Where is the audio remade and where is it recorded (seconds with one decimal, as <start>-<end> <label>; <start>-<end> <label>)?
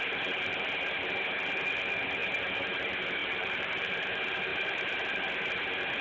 0.0-3.2 recorded; 3.2-4.0 remade; 4.0-4.5 recorded; 4.5-5.3 remade; 5.3-6.0 recorded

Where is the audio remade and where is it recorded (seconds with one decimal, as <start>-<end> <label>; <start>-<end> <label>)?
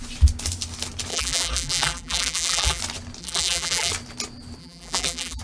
0.0-1.1 recorded; 1.1-2.8 remade; 2.8-3.2 recorded; 3.2-3.9 remade; 3.9-4.6 recorded; 4.6-5.4 remade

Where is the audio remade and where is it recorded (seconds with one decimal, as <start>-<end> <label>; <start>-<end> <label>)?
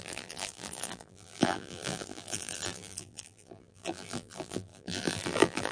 0.0-5.7 remade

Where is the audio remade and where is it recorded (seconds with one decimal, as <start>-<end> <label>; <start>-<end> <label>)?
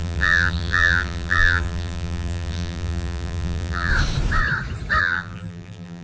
0.0-3.9 remade; 3.9-5.0 recorded; 5.0-6.0 remade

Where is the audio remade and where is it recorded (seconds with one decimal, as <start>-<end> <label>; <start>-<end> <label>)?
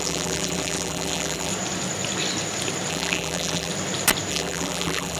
0.0-1.5 remade; 1.5-2.9 recorded; 2.9-3.7 remade; 3.7-4.3 recorded; 4.3-5.2 remade